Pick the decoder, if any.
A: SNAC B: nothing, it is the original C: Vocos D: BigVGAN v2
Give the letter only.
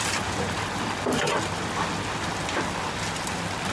B